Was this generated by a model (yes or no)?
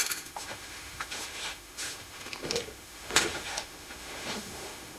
yes